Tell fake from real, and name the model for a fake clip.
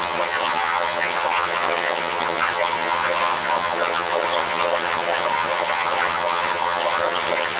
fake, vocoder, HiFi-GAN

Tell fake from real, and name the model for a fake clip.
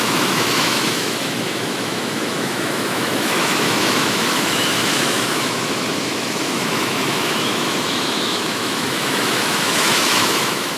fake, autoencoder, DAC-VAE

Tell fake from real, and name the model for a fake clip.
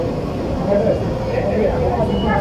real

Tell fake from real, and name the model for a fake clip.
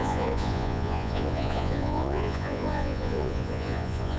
fake, vocoder, Vocos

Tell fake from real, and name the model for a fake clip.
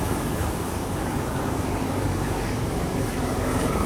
fake, codec, DAC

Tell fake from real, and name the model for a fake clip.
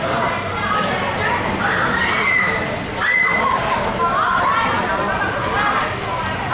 real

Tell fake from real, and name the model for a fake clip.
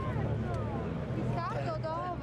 real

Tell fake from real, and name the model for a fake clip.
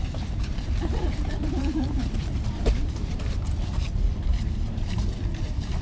fake, vocoder, BigVGAN v2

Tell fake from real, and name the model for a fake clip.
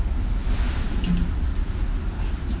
real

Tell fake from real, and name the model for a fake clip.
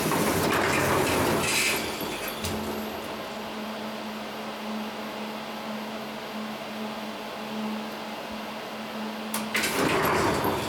real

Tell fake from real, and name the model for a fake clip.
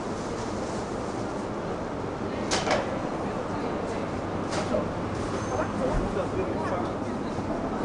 real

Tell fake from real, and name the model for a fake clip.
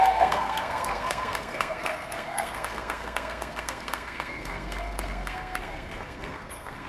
fake, codec, SNAC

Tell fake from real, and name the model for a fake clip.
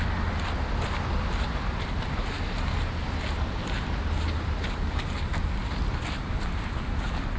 real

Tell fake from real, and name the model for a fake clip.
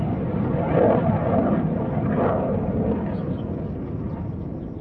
real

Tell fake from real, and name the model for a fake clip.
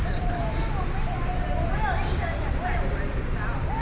real